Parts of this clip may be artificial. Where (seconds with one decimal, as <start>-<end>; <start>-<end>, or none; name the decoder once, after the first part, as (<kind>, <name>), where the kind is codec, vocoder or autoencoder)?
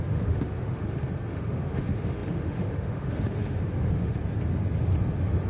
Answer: 0.0-0.8 (autoencoder, DAC-VAE); 1.3-4.2